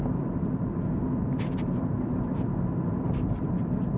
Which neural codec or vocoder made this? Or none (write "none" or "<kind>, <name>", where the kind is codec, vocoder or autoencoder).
vocoder, BigVGAN v2